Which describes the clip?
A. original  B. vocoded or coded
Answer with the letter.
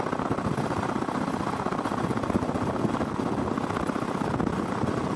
A